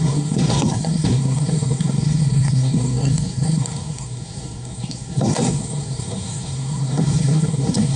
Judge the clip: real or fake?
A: fake